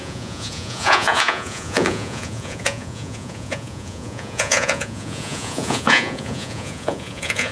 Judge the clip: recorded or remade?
remade